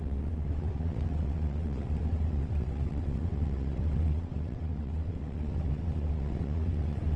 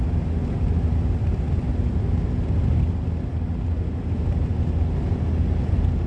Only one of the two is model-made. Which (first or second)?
first